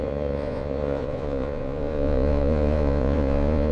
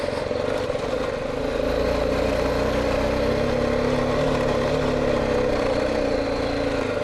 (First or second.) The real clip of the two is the second